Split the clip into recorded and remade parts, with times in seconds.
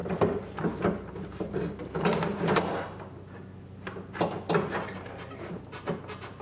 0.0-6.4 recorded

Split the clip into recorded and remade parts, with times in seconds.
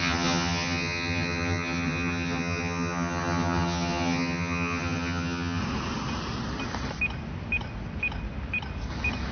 0.0-5.6 remade; 5.6-9.3 recorded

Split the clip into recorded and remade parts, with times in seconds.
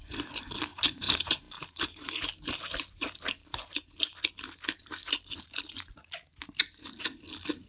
0.0-0.7 recorded; 0.7-4.3 remade; 4.3-4.8 recorded; 4.8-6.6 remade; 6.6-7.7 recorded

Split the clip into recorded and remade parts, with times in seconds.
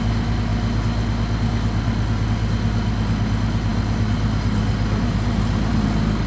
0.0-6.3 recorded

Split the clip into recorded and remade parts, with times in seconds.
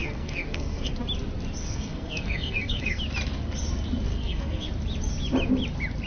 0.0-0.9 remade; 0.9-1.6 recorded; 1.6-3.0 remade; 3.0-4.1 recorded; 4.1-4.7 remade; 4.7-6.1 recorded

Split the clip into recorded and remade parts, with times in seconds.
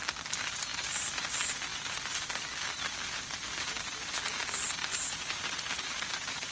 0.0-0.7 recorded; 0.7-1.2 remade; 1.2-4.8 recorded; 4.8-6.5 remade